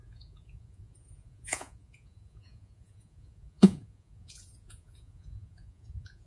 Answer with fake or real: fake